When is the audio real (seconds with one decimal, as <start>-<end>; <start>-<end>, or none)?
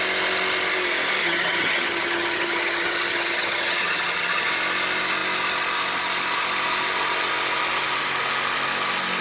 0.0-1.2; 4.5-9.2